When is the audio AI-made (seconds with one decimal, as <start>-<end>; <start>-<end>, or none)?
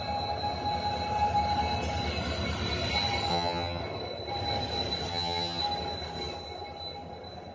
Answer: 3.3-3.8; 5.1-5.6